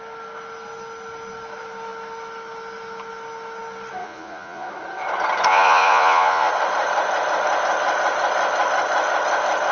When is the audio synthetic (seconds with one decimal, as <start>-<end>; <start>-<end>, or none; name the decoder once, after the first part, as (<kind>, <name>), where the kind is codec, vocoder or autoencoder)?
4.0-4.7 (vocoder, Vocos); 5.5-6.5